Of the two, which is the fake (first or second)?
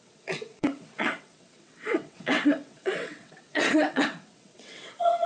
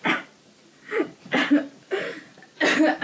first